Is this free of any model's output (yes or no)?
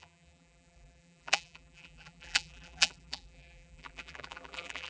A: no